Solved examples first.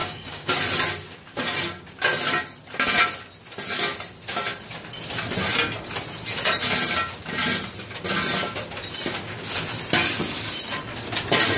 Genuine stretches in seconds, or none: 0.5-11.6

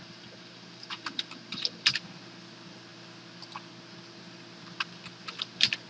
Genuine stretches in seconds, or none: 2.0-5.9

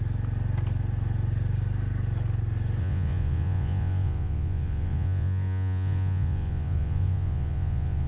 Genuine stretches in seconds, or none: 0.0-2.8

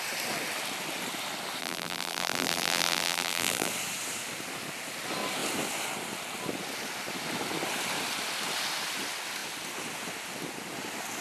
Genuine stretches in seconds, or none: 0.0-1.6; 3.7-11.2

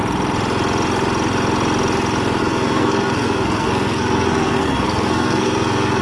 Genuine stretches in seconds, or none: 0.0-2.4

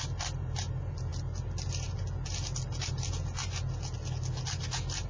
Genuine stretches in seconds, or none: 0.0-5.1

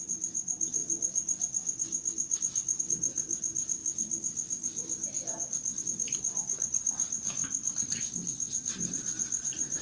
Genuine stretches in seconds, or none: 0.8-2.8; 3.8-5.8

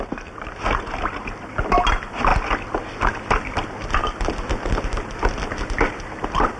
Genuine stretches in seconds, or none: 0.0-6.6